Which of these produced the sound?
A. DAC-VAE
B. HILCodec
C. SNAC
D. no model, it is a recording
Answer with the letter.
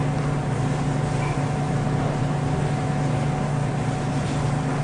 D